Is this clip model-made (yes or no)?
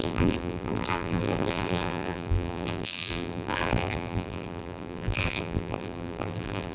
yes